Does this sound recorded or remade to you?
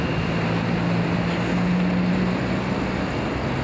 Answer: recorded